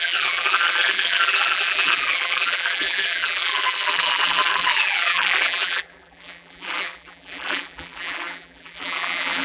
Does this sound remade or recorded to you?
remade